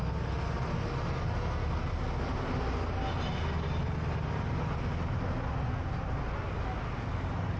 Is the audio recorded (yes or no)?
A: yes